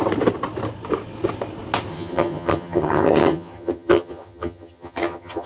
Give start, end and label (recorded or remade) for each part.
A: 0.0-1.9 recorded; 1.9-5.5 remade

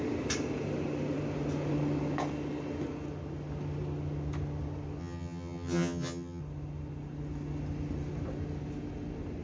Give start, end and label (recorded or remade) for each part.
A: 0.0-5.0 recorded; 5.0-6.4 remade; 6.4-9.4 recorded